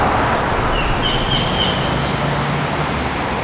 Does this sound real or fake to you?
real